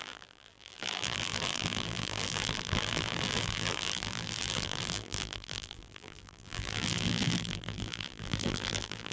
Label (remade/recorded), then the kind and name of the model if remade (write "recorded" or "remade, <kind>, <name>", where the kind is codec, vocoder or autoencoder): remade, vocoder, BigVGAN v2